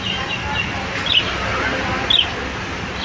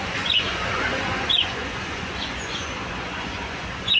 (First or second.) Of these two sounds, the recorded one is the first